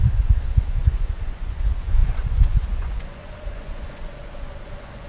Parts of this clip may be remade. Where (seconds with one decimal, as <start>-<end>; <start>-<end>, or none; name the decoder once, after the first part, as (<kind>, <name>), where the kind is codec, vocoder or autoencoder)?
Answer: 0.0-5.1 (vocoder, Vocos)